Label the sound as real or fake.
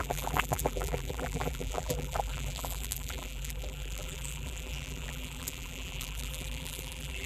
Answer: fake